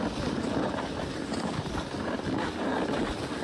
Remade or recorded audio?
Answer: recorded